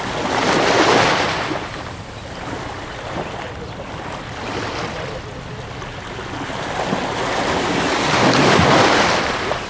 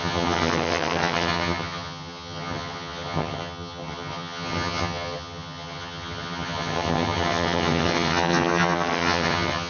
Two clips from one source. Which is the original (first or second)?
first